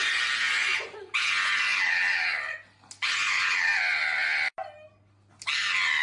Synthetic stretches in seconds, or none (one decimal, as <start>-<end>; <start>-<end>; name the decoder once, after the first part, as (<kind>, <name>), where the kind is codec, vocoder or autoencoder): 0.6-1.1 (vocoder, Vocos)